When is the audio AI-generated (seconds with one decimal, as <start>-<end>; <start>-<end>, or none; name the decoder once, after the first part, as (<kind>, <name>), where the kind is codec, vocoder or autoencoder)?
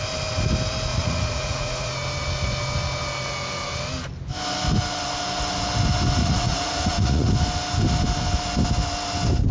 0.9-1.9 (vocoder, Vocos); 6.2-7.3